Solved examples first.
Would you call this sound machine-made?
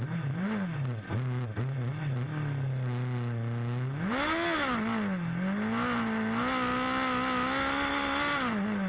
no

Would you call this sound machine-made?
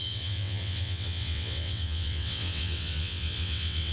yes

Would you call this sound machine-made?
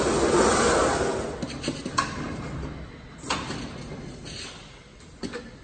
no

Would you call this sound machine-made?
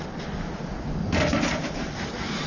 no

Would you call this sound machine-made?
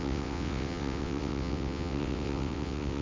yes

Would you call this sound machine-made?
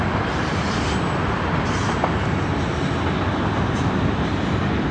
no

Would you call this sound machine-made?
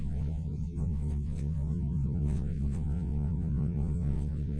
yes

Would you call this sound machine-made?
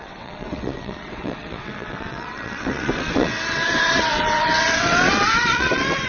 yes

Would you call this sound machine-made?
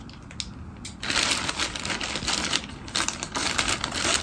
no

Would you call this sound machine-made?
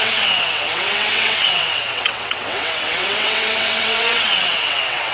yes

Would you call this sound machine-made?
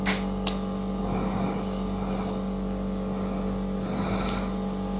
no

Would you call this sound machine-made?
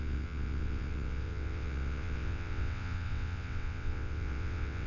yes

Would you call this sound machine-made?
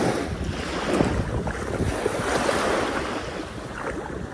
no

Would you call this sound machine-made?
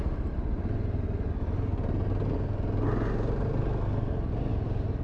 no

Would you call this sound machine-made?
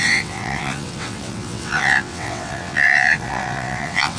yes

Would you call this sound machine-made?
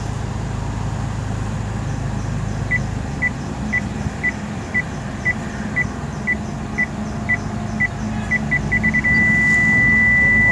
no